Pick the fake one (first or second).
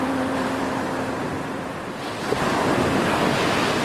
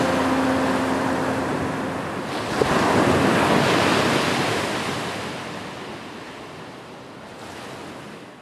first